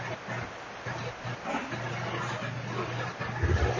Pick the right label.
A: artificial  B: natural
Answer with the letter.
B